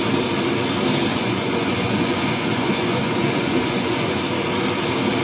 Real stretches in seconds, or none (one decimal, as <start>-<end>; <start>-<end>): 0.0-1.1; 4.2-5.2